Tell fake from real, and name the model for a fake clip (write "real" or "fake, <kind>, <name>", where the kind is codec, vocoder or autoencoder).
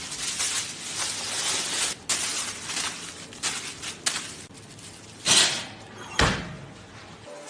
real